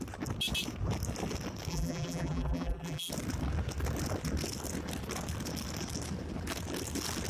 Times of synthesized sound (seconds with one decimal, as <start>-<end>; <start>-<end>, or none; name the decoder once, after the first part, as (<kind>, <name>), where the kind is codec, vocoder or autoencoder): 1.7-3.1 (vocoder, BigVGAN v2)